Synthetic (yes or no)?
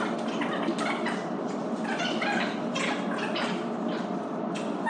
no